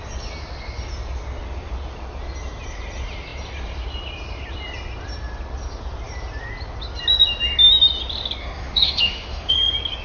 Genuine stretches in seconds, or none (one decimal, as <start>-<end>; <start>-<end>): 0.0-8.4; 9.5-10.0